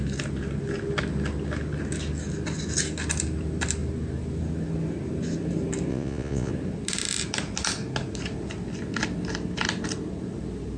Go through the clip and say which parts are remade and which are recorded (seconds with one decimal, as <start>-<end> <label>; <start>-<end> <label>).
0.0-5.9 recorded; 5.9-6.5 remade; 6.5-10.8 recorded